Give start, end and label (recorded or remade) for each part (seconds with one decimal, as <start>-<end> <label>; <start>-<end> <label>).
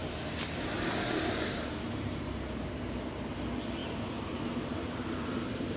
0.0-3.0 remade; 3.0-3.8 recorded; 3.8-5.8 remade